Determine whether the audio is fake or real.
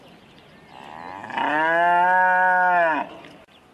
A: real